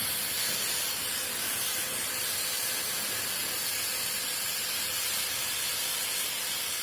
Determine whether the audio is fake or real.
real